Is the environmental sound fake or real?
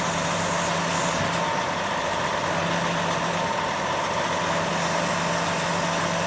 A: real